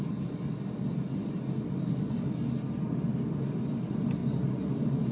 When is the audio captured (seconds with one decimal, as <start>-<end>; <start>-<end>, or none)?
0.0-5.1